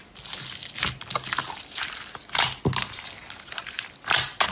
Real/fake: real